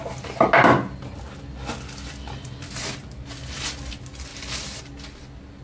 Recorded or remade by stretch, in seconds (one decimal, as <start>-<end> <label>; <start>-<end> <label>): 0.0-4.3 recorded; 4.3-4.8 remade; 4.8-5.6 recorded